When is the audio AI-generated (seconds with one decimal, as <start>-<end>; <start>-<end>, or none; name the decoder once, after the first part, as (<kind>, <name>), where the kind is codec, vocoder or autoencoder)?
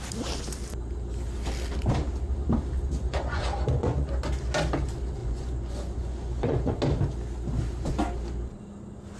3.0-4.1 (vocoder, Vocos); 5.2-6.8